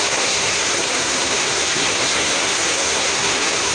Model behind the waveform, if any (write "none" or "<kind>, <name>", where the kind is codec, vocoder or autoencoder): codec, SNAC